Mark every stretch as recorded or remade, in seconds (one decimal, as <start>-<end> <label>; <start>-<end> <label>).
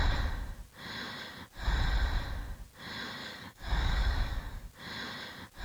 0.0-3.2 recorded; 3.2-4.7 remade; 4.7-5.6 recorded